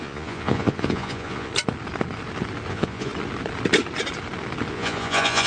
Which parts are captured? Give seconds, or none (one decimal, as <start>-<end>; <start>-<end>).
1.5-2.7; 3.1-4.7